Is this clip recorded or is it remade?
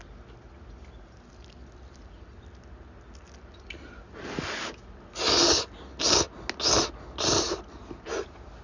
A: recorded